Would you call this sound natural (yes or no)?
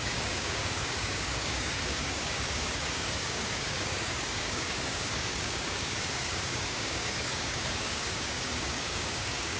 no